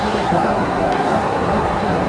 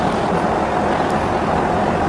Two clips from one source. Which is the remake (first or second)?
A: first